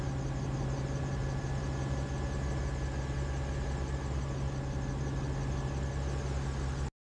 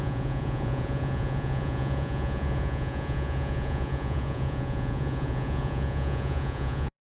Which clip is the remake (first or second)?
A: second